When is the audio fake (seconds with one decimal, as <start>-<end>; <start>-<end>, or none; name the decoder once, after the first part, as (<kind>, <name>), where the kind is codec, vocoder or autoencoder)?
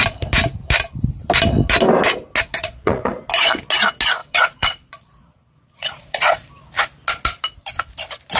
2.6-3.2 (vocoder, Vocos); 4.2-6.5